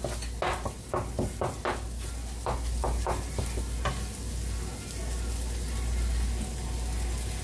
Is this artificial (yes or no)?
no